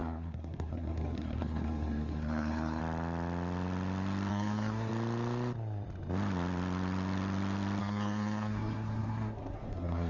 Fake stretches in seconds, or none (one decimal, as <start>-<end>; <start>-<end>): 0.0-2.8; 4.3-4.9; 7.8-10.1